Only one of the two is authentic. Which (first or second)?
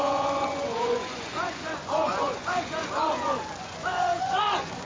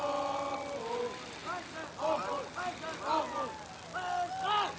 second